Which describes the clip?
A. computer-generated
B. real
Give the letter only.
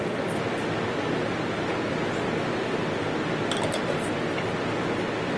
B